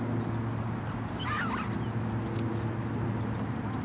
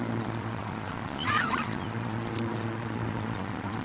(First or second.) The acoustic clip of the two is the first